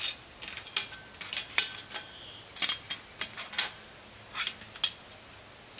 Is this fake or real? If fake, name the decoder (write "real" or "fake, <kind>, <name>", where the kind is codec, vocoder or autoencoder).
real